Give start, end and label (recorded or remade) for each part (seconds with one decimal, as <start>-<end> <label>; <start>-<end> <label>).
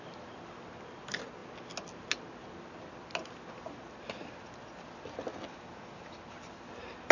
0.0-7.1 recorded